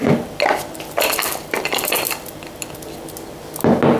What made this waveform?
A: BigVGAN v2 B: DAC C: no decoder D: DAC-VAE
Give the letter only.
C